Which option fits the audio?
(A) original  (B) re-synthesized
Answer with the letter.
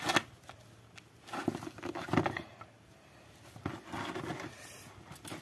A